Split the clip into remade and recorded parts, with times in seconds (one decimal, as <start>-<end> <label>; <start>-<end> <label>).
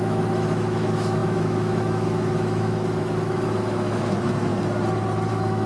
0.0-4.5 remade; 4.5-5.3 recorded; 5.3-5.7 remade